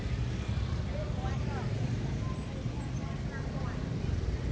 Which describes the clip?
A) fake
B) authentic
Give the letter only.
B